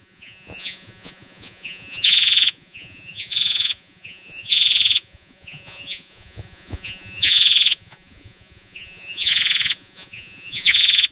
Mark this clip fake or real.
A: fake